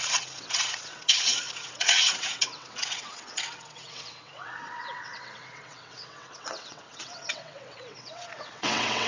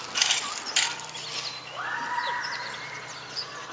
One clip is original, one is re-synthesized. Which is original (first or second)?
second